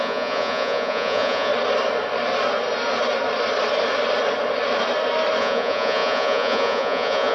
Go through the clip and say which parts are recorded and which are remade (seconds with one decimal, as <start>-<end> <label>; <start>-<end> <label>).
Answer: 0.0-1.5 remade; 1.5-5.4 recorded; 5.4-7.3 remade